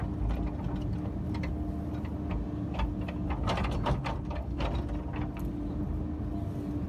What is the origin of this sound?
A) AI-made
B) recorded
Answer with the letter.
B